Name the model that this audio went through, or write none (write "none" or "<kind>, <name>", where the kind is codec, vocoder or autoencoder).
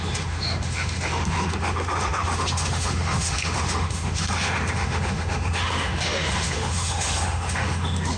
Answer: autoencoder, DAC-VAE